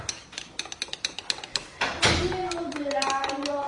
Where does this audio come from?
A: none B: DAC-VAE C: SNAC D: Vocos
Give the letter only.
A